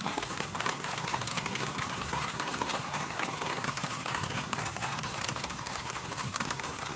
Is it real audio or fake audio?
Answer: fake